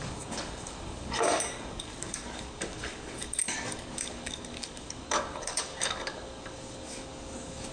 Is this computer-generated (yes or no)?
yes